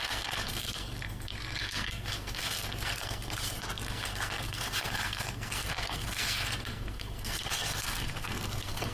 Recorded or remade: remade